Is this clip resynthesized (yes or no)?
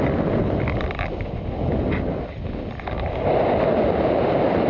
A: no